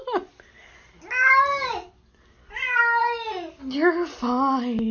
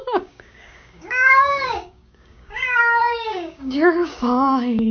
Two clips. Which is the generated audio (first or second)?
second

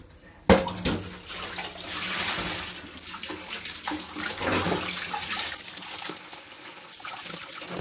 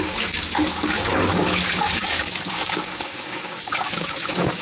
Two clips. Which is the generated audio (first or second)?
second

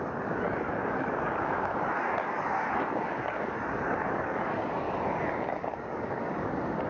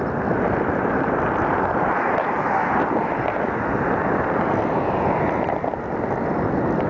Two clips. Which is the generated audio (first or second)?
first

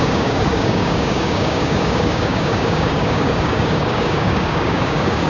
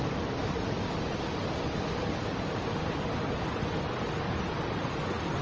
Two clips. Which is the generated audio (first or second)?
first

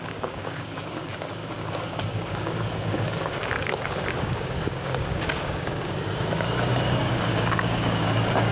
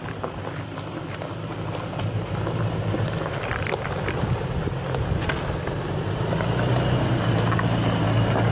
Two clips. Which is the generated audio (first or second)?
first